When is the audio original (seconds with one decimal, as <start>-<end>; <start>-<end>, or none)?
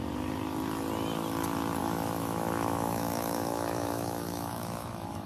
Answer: 0.0-1.8